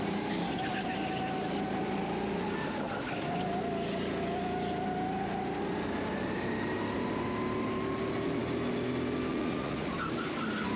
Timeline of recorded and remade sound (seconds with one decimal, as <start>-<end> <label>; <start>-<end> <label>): 0.0-9.3 recorded; 9.3-9.9 remade; 9.9-10.8 recorded